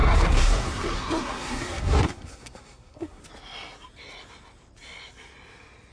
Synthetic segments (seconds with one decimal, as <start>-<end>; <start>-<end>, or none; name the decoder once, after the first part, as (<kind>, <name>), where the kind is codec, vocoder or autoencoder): 0.0-3.2 (codec, SNAC)